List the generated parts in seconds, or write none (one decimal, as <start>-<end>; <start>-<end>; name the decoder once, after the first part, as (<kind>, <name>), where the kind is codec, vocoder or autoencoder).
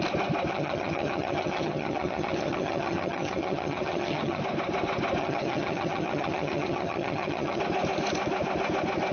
0.5-4.4 (vocoder, HiFi-GAN); 5.2-7.6